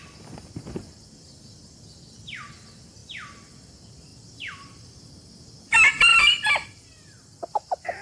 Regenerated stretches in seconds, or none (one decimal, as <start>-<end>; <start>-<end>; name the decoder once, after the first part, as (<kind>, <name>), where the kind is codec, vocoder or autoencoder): 4.1-4.8 (vocoder, BigVGAN v2); 6.1-6.8